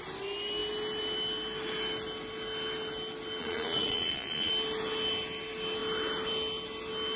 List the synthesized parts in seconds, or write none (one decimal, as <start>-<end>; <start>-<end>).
3.4-4.5